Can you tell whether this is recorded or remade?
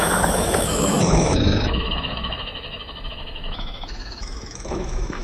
remade